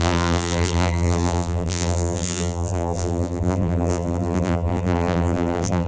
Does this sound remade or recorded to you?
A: remade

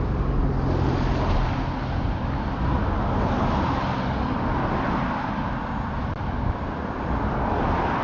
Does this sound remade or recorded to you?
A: recorded